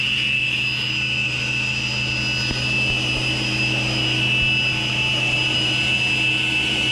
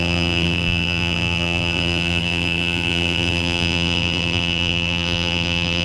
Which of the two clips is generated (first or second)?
second